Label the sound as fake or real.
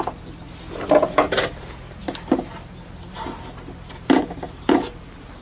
real